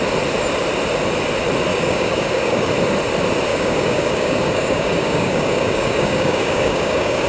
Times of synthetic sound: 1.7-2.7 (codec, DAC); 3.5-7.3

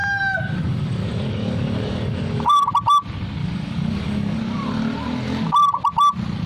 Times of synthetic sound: 0.0-2.7 (codec, DAC); 3.4-4.4

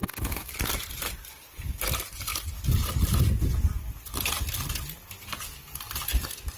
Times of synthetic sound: 0.0-0.5 (codec, DAC)

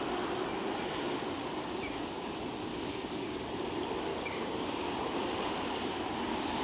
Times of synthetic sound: 1.6-2.3 (codec, DAC); 2.7-3.5; 4.1-4.9

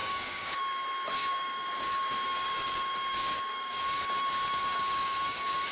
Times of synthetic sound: 0.0-0.6 (codec, DAC); 1.2-4.0; 4.6-5.7

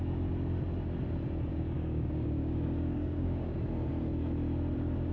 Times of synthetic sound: 1.5-3.5 (codec, DAC)